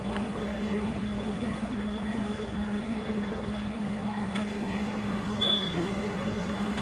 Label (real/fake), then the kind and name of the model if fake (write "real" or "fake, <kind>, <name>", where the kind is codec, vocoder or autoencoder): fake, codec, SNAC